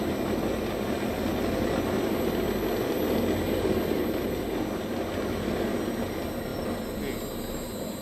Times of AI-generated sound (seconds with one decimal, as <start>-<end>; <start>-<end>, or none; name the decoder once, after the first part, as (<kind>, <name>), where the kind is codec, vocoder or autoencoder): 6.5-7.0 (vocoder, BigVGAN v2)